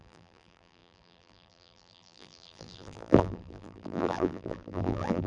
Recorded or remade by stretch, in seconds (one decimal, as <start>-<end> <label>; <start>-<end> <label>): 0.0-5.3 remade